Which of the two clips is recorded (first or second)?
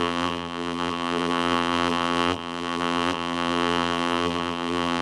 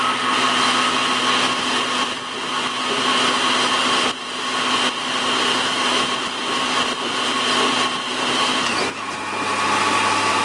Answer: second